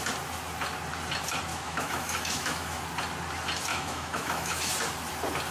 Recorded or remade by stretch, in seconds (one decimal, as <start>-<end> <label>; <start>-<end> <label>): 0.0-1.5 recorded; 1.5-2.8 remade; 2.8-3.7 recorded; 3.7-4.7 remade; 4.7-5.5 recorded